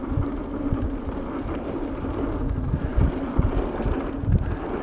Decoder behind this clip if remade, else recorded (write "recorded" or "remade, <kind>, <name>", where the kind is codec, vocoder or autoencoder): recorded